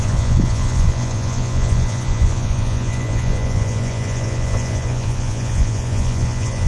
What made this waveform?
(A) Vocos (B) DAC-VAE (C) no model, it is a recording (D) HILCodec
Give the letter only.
A